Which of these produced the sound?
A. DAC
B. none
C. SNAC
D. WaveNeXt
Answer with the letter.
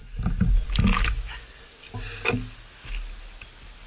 B